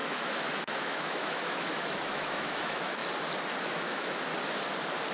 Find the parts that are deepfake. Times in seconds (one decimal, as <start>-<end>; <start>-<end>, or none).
0.0-3.0; 3.6-4.3